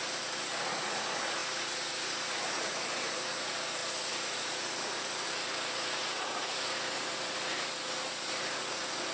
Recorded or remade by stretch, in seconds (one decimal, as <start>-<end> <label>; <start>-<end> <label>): 0.0-9.1 remade